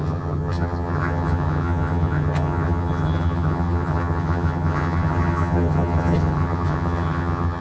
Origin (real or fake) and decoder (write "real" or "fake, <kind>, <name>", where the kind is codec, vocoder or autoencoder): fake, vocoder, HiFi-GAN